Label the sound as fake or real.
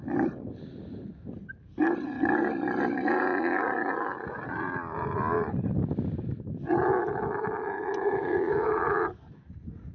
real